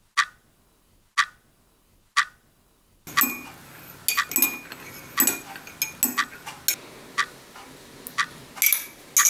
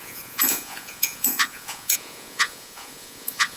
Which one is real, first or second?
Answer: first